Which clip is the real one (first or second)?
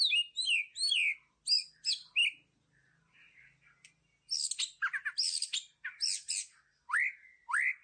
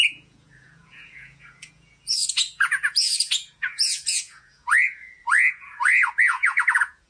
first